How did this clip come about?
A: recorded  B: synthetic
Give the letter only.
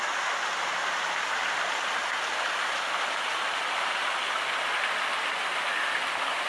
A